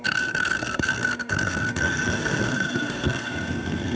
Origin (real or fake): fake